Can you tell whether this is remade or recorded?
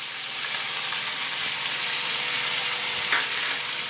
recorded